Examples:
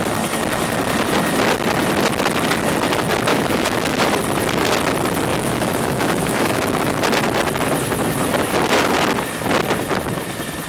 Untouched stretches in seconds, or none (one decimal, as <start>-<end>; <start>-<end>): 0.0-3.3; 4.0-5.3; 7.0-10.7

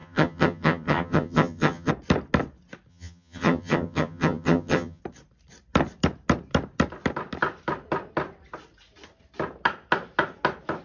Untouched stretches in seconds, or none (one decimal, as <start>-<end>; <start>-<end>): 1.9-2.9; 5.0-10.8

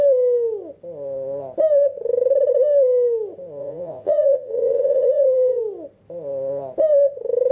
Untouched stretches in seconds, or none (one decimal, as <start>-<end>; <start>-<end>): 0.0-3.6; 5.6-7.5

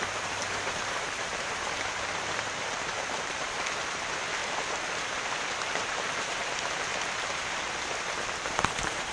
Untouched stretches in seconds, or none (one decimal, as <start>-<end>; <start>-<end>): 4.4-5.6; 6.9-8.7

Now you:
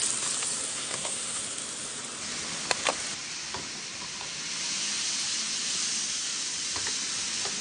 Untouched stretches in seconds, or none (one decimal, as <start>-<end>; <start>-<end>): 0.0-0.7; 1.4-7.6

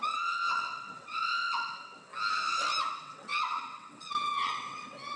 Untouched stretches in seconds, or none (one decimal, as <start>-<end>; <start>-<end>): 2.1-2.9